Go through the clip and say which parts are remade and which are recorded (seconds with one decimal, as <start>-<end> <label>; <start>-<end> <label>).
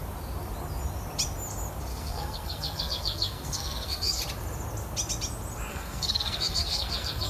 0.0-1.9 recorded; 1.9-4.2 remade; 4.2-5.7 recorded; 5.7-7.3 remade